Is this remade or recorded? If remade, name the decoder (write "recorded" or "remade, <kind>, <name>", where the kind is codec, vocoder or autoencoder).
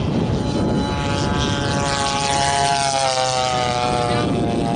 recorded